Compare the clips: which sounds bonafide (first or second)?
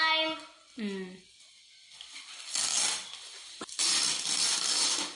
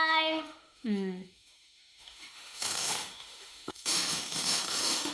first